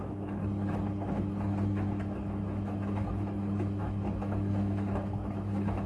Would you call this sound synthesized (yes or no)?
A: yes